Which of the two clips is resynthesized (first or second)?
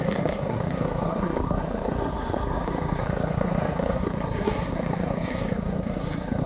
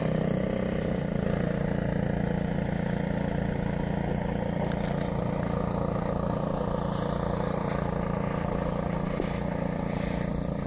first